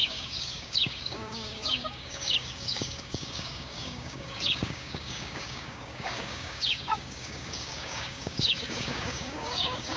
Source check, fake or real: fake